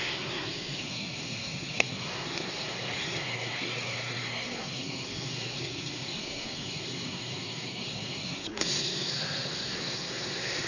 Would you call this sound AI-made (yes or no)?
yes